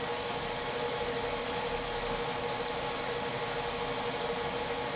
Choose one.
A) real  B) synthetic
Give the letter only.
A